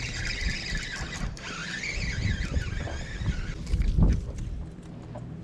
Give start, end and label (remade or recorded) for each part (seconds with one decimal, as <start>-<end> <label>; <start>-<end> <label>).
0.0-1.6 remade; 1.6-4.8 recorded; 4.8-5.4 remade